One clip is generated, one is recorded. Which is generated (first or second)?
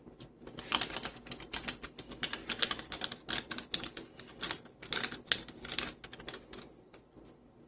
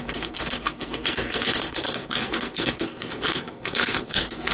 second